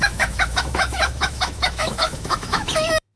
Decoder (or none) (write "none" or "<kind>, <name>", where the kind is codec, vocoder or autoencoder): autoencoder, DAC-VAE